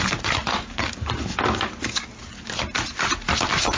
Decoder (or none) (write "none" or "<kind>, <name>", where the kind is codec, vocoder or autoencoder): none